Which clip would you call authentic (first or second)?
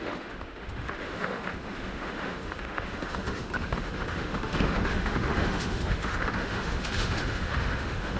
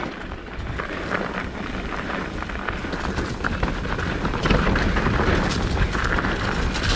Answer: second